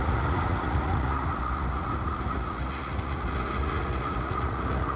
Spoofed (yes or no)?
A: yes